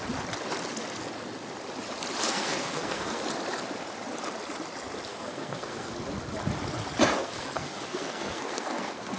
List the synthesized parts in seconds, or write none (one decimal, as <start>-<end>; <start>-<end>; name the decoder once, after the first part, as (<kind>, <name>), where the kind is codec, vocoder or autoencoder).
2.2-3.2 (codec, SNAC); 5.1-5.9; 7.2-9.2